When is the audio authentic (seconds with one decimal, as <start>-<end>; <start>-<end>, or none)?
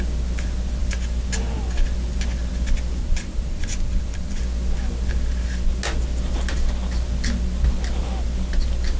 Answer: 0.0-3.0; 4.4-9.0